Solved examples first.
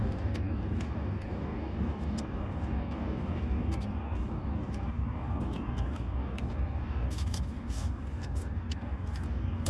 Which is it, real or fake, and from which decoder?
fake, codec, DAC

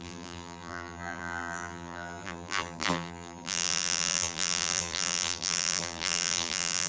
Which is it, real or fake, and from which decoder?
fake, vocoder, BigVGAN v2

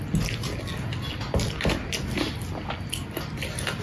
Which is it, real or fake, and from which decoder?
real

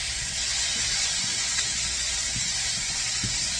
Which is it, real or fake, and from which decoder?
fake, vocoder, Vocos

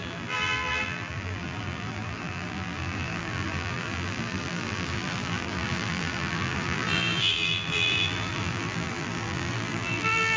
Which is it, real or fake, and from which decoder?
fake, vocoder, BigVGAN v2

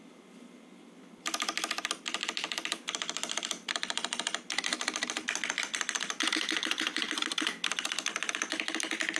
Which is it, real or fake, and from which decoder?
real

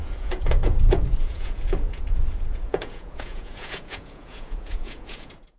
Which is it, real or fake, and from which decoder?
fake, vocoder, Vocos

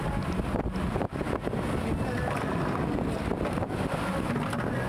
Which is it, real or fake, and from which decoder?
real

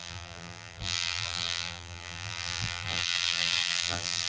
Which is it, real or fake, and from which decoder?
fake, vocoder, BigVGAN v2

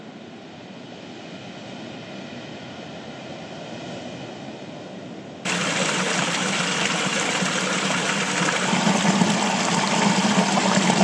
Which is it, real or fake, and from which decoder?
real